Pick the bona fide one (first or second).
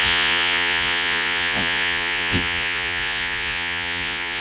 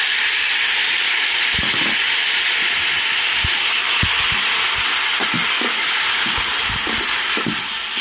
second